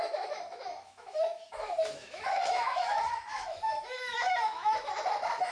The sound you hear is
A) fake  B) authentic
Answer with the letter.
A